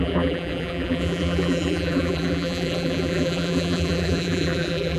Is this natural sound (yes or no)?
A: no